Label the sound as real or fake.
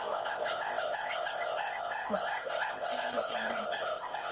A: fake